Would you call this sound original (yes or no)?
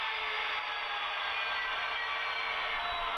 yes